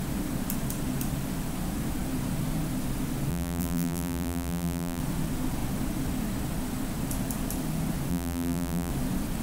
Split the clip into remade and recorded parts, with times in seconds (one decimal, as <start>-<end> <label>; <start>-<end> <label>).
0.0-3.3 recorded; 3.3-5.0 remade; 5.0-8.1 recorded; 8.1-8.9 remade; 8.9-9.4 recorded